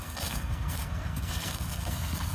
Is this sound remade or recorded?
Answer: remade